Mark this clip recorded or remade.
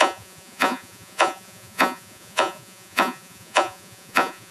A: remade